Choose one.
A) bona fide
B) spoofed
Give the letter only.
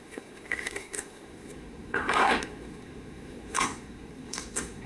B